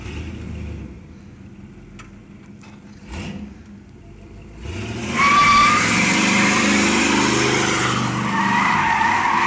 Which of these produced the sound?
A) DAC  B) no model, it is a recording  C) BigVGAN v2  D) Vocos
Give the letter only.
B